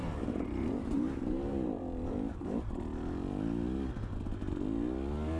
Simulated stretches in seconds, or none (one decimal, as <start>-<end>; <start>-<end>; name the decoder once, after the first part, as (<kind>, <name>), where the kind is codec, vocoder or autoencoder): 0.0-2.7 (vocoder, BigVGAN v2)